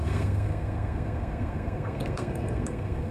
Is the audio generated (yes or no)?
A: yes